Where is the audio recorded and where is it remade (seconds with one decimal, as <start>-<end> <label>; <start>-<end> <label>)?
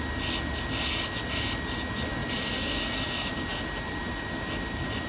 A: 0.0-5.1 recorded